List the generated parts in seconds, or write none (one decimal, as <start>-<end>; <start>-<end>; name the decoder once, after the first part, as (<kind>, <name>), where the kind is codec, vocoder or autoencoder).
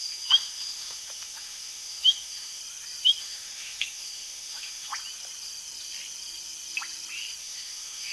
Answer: 0.0-2.6 (autoencoder, DAC-VAE); 3.2-4.9; 7.4-8.1